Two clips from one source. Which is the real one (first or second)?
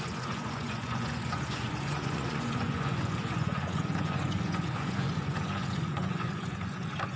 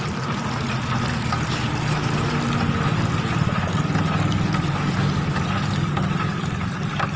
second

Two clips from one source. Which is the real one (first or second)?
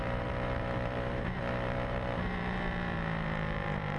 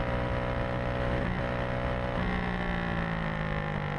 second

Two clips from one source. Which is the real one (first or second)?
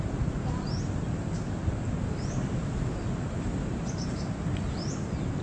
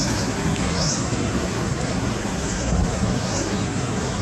first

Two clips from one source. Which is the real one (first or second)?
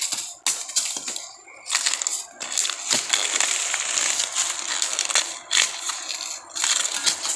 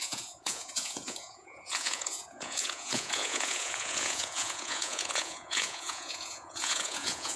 first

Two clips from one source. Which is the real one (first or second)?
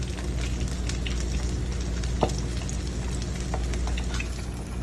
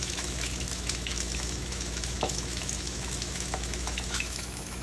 first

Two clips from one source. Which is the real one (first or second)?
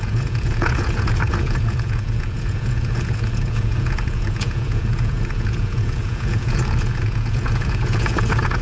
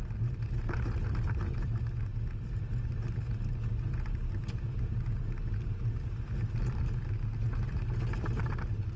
second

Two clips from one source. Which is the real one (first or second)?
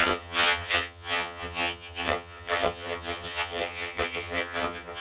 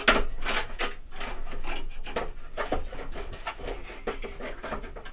second